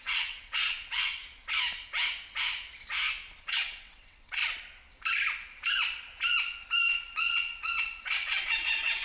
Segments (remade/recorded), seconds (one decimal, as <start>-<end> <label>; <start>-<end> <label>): 0.0-1.2 remade; 1.2-3.4 recorded; 3.4-4.4 remade; 4.4-6.9 recorded; 6.9-9.0 remade